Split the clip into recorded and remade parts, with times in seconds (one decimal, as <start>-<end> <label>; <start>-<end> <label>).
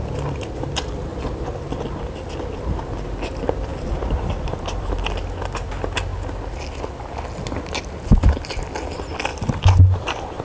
0.0-1.1 recorded; 1.1-2.1 remade; 2.1-3.7 recorded; 3.7-4.9 remade; 4.9-9.3 recorded; 9.3-10.4 remade